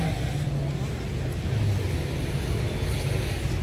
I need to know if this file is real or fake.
real